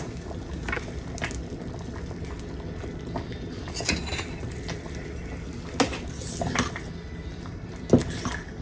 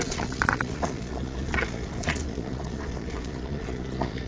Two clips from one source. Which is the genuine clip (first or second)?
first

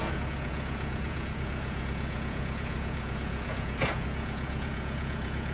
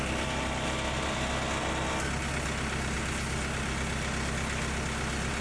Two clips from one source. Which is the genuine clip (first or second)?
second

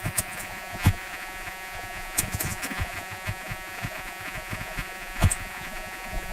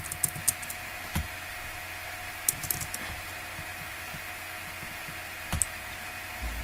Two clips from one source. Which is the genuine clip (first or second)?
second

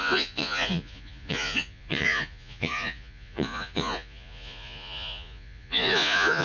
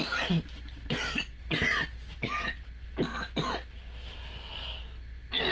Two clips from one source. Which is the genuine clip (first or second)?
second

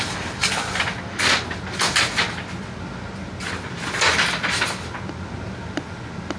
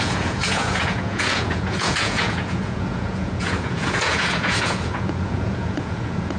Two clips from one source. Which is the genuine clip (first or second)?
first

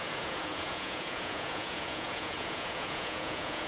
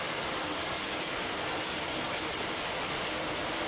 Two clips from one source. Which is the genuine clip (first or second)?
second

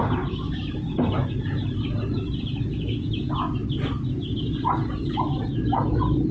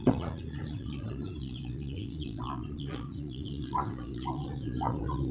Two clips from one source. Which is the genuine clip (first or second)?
first